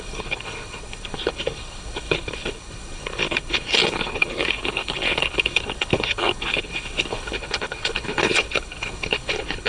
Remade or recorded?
remade